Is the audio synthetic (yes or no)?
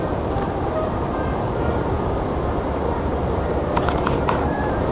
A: yes